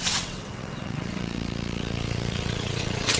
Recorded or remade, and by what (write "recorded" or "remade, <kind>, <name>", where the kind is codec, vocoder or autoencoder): remade, vocoder, WaveNeXt